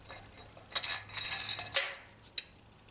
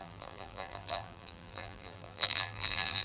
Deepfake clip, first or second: second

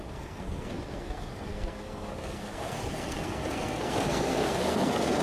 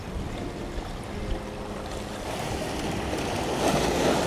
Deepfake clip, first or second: first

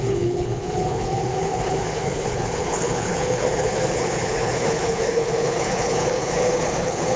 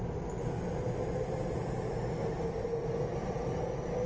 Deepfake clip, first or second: first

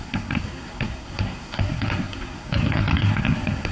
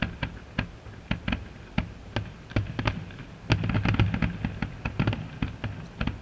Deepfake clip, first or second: first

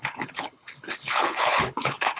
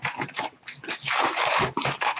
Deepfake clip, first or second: first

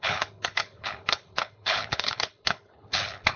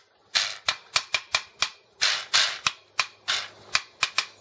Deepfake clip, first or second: first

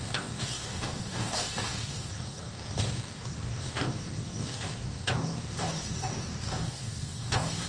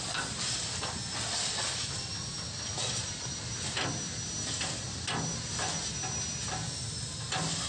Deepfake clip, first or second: first